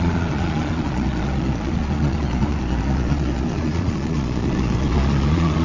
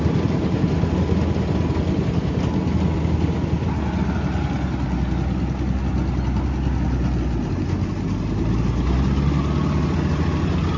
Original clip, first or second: second